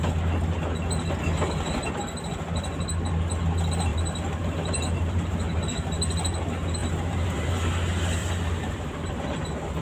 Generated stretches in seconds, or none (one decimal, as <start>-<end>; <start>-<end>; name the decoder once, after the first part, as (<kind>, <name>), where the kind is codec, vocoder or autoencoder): 3.9-5.6 (vocoder, BigVGAN v2); 6.8-7.5; 8.2-9.1